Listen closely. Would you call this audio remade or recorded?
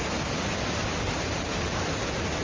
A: recorded